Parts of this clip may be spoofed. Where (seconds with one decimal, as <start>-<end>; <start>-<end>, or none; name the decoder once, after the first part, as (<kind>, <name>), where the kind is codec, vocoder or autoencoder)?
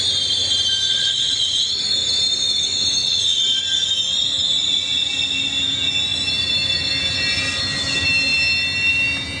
0.9-1.8 (vocoder, WaveNeXt); 3.0-3.6